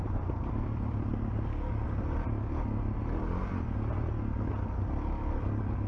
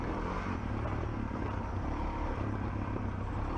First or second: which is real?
first